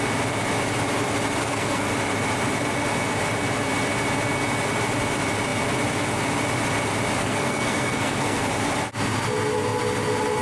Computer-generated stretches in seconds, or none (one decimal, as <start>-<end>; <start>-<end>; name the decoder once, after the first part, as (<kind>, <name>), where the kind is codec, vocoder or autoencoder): 1.4-1.9 (codec, SNAC); 7.2-8.4